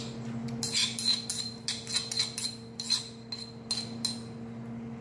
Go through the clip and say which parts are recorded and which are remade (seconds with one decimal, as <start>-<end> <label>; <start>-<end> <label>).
0.0-5.0 recorded